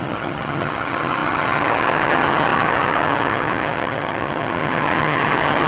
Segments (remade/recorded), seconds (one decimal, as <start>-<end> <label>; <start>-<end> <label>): 0.0-5.7 remade